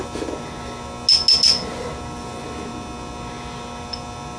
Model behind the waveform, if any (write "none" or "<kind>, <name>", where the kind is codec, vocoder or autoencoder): none